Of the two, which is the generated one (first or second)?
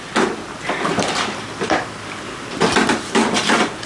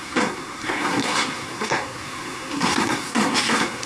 second